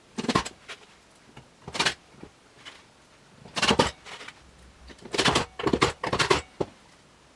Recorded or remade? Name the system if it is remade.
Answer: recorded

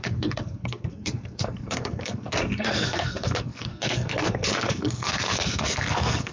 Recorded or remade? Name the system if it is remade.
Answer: remade, codec, SNAC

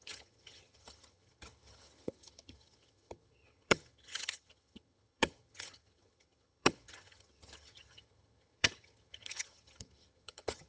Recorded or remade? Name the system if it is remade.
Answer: remade, vocoder, HiFi-GAN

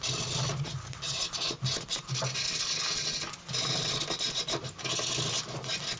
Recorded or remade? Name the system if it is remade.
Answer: recorded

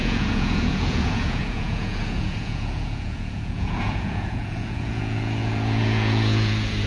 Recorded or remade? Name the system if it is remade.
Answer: remade, vocoder, Vocos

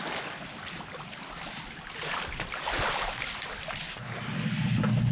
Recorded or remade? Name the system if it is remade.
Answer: recorded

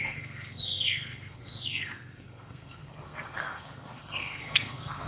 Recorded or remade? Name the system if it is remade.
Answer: remade, codec, SNAC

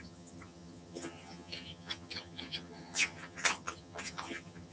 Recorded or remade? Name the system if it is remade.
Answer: remade, vocoder, HiFi-GAN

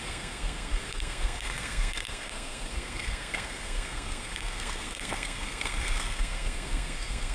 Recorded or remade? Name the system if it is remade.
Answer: remade, codec, SNAC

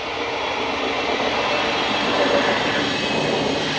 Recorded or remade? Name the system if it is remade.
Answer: recorded